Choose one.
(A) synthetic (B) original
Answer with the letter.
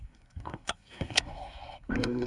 A